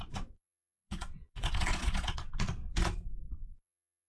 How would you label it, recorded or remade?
remade